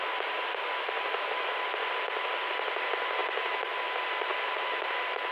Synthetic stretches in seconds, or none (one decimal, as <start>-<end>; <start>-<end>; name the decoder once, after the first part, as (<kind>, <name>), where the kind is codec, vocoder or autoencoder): 0.0-5.3 (vocoder, BigVGAN v2)